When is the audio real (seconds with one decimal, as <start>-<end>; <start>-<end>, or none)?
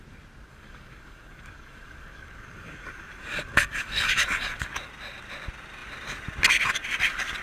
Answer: 0.0-0.5; 4.9-7.4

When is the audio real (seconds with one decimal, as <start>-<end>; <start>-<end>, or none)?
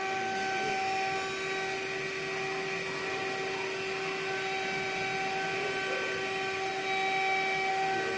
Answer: 0.0-8.2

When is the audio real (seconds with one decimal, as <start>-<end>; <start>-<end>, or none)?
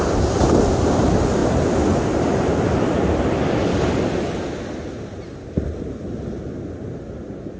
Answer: 0.0-7.6